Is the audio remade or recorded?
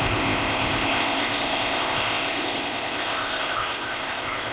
remade